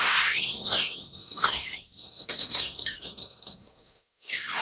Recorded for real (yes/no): no